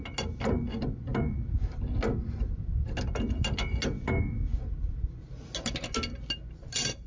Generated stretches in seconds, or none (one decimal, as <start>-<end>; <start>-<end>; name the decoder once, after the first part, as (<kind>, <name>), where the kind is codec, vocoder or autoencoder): none